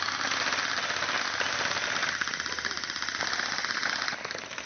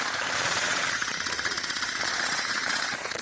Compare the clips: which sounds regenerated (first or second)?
second